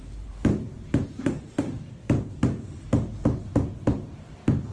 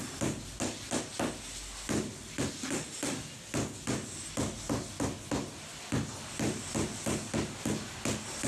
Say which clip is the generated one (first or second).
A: first